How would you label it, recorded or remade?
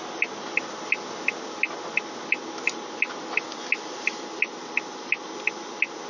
recorded